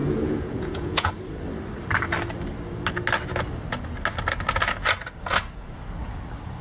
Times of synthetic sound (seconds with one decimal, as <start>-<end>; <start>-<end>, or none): 0.0-1.1